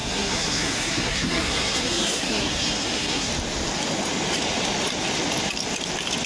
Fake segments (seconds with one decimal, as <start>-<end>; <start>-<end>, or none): 0.0-3.3